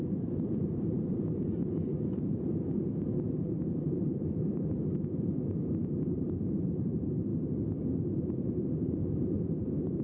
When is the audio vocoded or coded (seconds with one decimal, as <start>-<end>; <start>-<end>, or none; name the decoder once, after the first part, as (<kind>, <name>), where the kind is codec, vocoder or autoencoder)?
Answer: 0.0-7.3 (vocoder, BigVGAN v2); 8.2-10.0